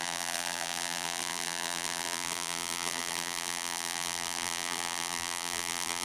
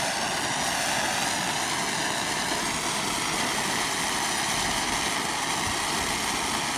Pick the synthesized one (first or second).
first